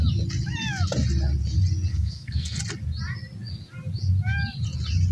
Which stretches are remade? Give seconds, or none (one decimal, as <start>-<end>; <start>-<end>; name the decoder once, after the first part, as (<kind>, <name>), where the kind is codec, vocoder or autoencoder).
1.9-2.6 (codec, SNAC)